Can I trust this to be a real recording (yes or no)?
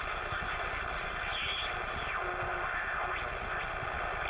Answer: yes